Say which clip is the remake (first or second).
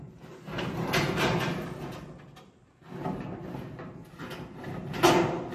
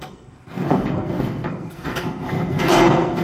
second